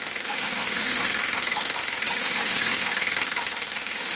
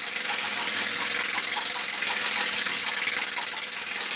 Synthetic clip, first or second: first